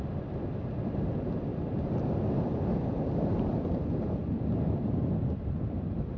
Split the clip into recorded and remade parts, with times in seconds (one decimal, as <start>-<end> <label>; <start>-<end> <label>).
0.0-6.2 recorded